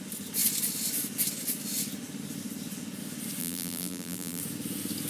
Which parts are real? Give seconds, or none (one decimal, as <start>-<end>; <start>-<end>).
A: 0.0-3.4; 4.4-5.1